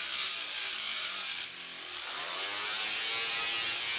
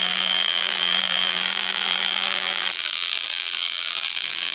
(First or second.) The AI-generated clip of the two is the second